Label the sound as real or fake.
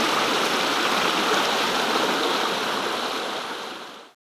real